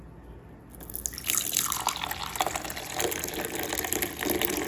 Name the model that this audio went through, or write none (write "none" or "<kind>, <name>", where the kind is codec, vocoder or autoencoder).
none